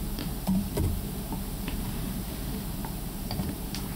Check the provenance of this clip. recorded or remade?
remade